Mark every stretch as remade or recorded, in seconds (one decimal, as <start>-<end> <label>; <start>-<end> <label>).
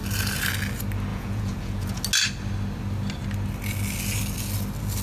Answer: 0.0-1.1 recorded; 1.1-2.0 remade; 2.0-5.0 recorded